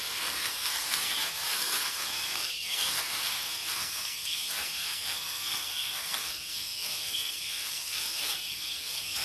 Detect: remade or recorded remade